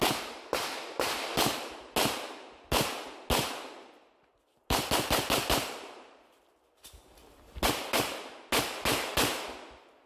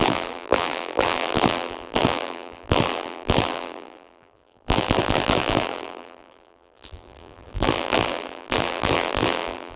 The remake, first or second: second